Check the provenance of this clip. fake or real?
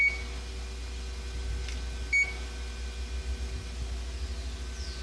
real